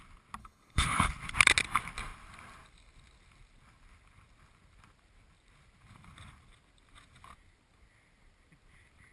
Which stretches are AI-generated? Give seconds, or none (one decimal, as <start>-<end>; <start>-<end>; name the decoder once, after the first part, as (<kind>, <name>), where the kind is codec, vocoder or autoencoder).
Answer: 0.4-1.1 (codec, HILCodec)